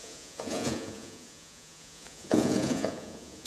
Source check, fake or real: fake